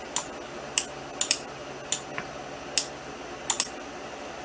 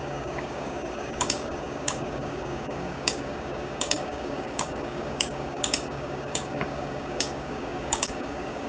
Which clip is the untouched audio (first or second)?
first